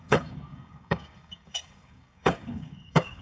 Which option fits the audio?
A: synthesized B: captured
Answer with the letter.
A